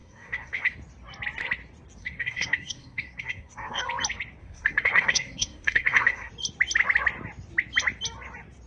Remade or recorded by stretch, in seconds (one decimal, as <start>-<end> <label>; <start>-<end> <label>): 0.0-0.7 remade; 0.7-2.0 recorded; 2.0-3.8 remade; 3.8-4.4 recorded; 4.4-6.3 remade; 6.3-8.7 recorded